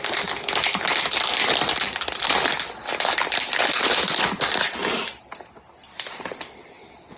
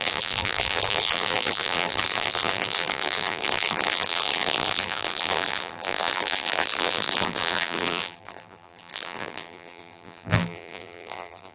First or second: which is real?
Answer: first